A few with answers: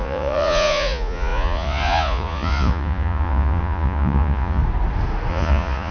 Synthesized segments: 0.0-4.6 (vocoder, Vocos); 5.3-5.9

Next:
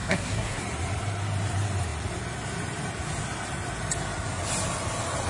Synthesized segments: 0.0-0.6 (codec, SNAC)

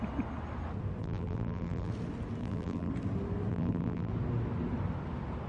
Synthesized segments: 1.0-1.9 (vocoder, BigVGAN v2); 2.4-2.9; 3.5-4.1

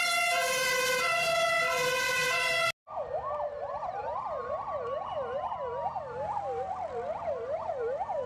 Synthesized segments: none

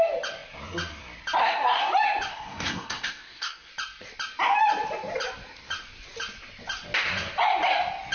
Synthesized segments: 1.4-1.9 (codec, SNAC); 2.3-3.7

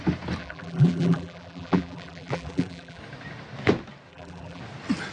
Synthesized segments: 0.4-3.0 (vocoder, BigVGAN v2); 4.1-4.6